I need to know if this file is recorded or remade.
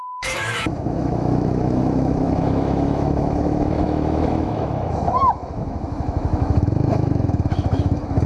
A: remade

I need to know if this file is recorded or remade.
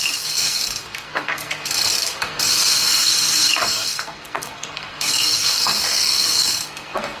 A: remade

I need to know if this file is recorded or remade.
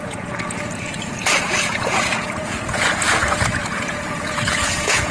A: remade